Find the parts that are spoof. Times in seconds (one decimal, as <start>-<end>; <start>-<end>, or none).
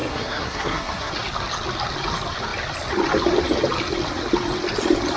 0.0-1.1